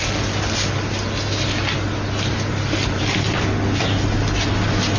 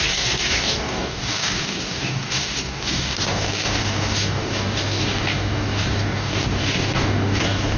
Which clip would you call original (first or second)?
first